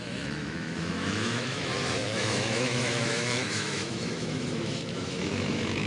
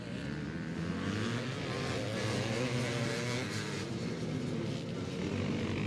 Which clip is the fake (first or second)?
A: first